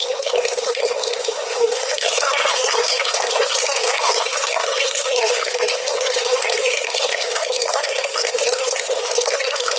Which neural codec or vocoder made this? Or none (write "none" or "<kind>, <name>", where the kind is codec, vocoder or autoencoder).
codec, SNAC